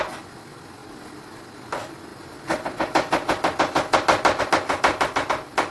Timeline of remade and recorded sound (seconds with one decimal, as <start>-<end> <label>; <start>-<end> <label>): 0.0-5.7 recorded